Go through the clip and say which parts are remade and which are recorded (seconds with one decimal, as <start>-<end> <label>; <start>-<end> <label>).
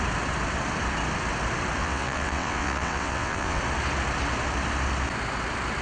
0.0-1.8 recorded; 1.8-3.6 remade; 3.6-5.8 recorded